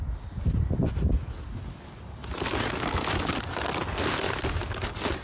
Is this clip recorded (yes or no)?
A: yes